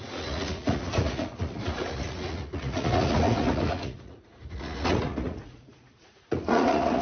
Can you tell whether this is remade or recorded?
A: remade